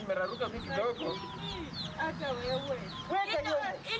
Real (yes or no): yes